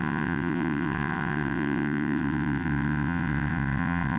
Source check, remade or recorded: remade